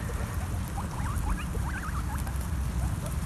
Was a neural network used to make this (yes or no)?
no